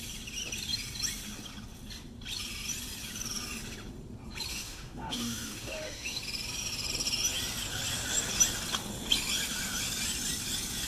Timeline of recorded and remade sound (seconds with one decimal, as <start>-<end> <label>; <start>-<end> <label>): 0.0-4.5 recorded; 4.5-6.2 remade; 6.2-10.9 recorded